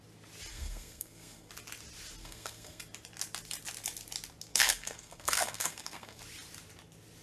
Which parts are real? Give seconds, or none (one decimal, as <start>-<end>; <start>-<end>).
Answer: 0.0-0.5; 1.5-2.2; 2.8-4.5; 6.2-7.2